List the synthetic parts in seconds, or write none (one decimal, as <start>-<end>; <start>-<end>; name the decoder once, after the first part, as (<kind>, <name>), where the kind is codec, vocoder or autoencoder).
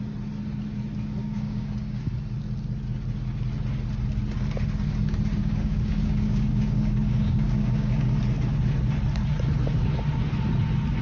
1.2-2.0 (codec, DAC); 5.4-8.2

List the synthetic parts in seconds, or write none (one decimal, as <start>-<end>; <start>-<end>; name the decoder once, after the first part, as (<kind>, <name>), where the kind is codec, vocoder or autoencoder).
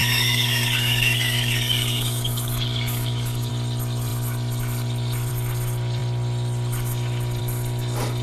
0.0-3.5 (codec, DAC)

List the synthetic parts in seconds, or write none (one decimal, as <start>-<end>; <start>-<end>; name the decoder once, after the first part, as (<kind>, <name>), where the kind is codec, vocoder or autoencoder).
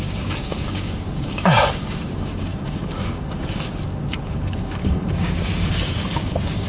0.0-6.7 (codec, DAC)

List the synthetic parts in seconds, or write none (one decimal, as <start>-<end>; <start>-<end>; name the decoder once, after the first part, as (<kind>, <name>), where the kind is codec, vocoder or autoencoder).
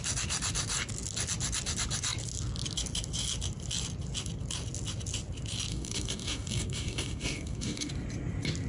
5.7-7.9 (codec, DAC)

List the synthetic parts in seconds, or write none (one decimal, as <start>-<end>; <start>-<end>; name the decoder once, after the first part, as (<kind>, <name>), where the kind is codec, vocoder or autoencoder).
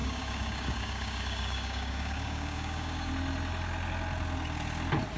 0.0-3.1 (codec, DAC)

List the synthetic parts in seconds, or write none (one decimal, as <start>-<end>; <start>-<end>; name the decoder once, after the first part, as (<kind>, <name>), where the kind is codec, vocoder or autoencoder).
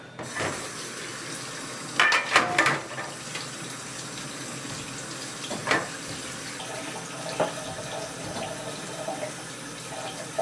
none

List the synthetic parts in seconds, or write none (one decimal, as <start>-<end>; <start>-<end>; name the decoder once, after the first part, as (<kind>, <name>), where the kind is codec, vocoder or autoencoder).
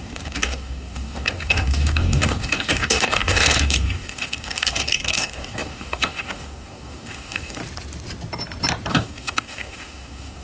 0.0-7.6 (codec, DAC); 8.9-10.4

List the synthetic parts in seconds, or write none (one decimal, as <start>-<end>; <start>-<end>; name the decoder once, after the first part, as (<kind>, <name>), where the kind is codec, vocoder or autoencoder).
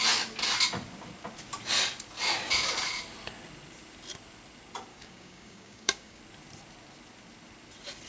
4.9-6.2 (codec, DAC)